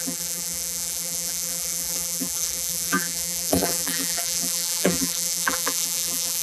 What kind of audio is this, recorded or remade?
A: remade